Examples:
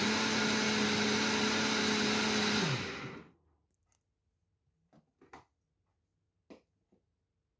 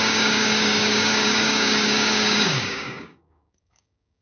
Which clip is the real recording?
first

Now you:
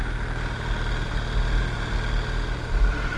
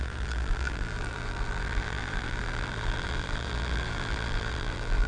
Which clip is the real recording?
first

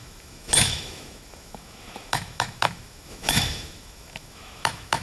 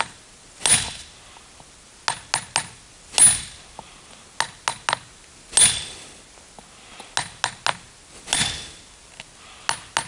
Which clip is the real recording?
second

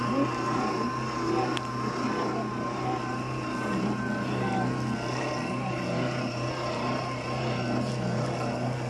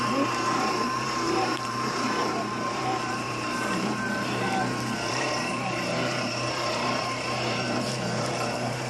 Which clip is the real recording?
first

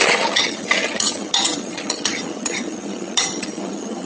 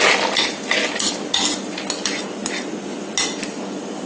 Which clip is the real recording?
second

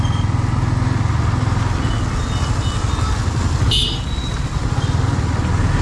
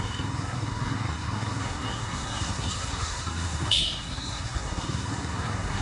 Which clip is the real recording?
first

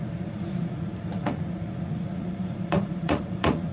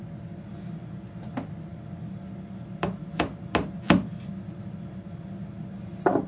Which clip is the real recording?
second